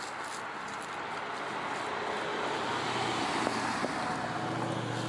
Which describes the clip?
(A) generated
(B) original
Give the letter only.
B